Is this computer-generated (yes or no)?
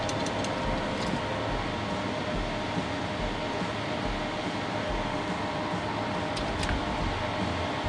no